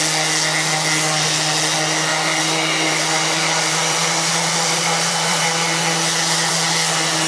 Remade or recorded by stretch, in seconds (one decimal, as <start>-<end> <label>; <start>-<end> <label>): 0.0-2.1 recorded; 2.1-6.5 remade; 6.5-7.3 recorded